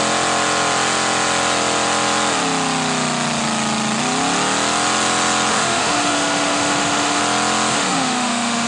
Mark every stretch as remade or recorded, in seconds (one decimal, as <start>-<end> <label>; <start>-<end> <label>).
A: 0.0-5.5 recorded; 5.5-7.2 remade; 7.2-7.7 recorded; 7.7-8.7 remade